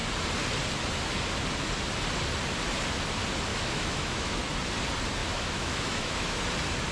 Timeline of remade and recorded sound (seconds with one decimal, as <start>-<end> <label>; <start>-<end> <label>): 0.0-3.5 recorded; 3.5-4.4 remade; 4.4-5.2 recorded; 5.2-6.4 remade; 6.4-6.9 recorded